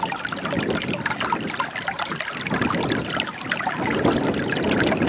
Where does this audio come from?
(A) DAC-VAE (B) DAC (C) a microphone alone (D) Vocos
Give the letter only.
C